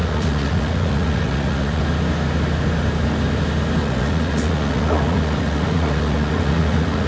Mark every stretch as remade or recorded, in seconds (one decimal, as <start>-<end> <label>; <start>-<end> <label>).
0.0-1.8 remade; 1.8-3.8 recorded; 3.8-7.1 remade